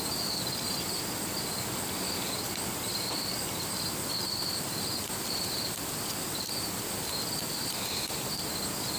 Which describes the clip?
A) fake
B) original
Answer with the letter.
B